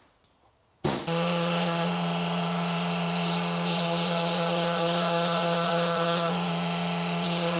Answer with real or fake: fake